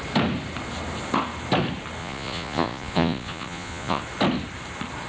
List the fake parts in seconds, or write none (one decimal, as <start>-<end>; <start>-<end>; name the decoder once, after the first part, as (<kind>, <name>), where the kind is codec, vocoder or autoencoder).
2.0-4.0 (vocoder, Vocos)